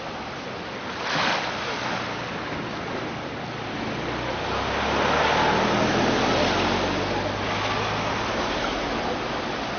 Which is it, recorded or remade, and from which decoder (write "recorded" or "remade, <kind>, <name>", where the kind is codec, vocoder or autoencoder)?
recorded